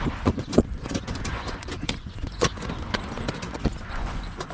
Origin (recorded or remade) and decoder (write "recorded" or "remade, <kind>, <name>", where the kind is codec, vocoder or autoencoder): remade, vocoder, Vocos